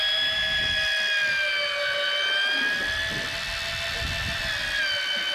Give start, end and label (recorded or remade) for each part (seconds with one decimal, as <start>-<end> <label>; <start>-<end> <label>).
0.0-5.3 recorded